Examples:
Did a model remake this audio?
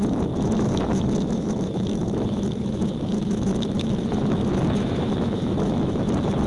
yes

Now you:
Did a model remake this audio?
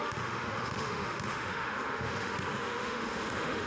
yes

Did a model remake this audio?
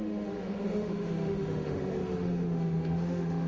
yes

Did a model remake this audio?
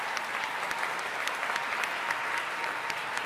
no